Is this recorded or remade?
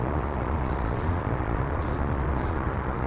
remade